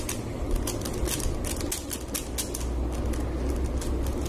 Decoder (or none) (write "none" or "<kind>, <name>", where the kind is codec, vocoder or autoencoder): none